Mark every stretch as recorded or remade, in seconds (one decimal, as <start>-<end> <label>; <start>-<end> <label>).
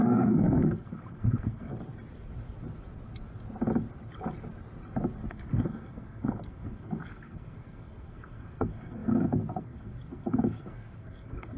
0.0-1.7 remade; 1.7-5.3 recorded; 5.3-11.6 remade